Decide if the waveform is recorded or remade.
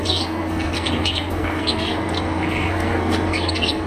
remade